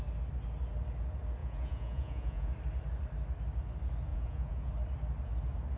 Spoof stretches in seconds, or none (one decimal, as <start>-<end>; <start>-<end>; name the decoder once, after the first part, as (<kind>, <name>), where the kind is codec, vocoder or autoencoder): 1.4-2.5 (vocoder, Vocos); 4.1-4.7